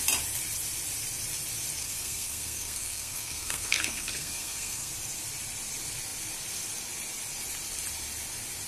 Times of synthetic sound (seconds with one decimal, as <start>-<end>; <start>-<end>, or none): 1.8-4.9